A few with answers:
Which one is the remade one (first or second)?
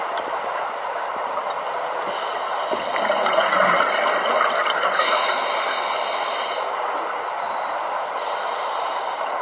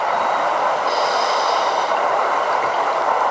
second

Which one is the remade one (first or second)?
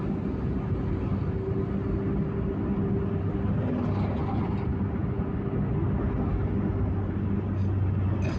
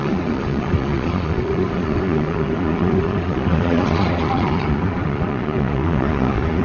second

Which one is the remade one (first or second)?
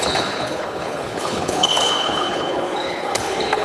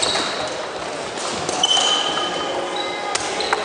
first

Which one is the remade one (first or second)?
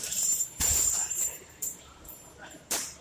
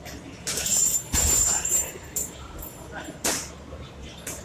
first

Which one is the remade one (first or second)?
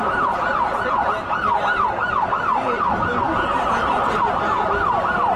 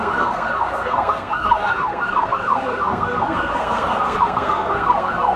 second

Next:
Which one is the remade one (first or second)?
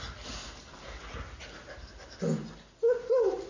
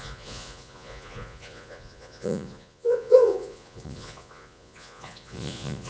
second